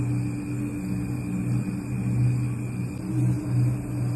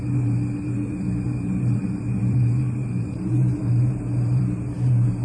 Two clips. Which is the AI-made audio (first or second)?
second